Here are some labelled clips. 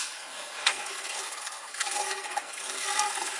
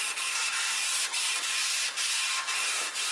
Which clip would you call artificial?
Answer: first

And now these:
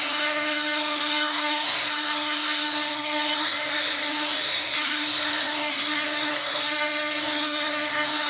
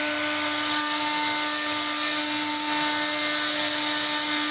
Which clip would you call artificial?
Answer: first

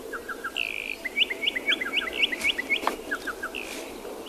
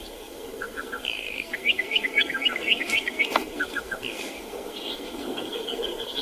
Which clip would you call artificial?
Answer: second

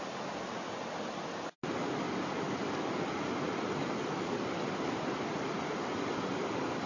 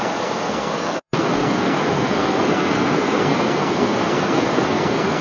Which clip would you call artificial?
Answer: second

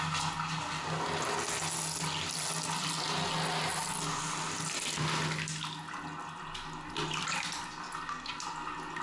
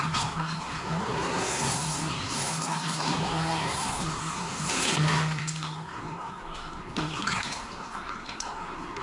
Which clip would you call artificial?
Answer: second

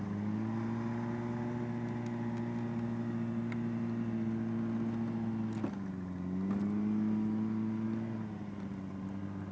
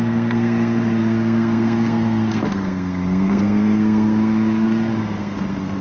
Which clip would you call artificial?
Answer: second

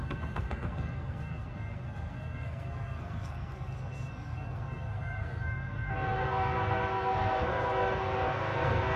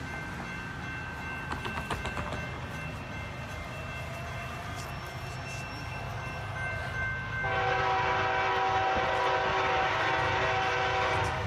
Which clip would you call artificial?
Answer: first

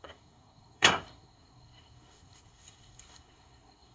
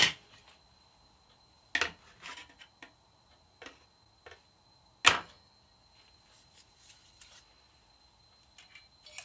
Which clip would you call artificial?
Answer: first